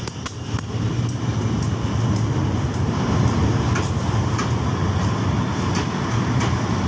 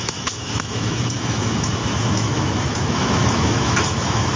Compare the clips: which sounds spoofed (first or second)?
second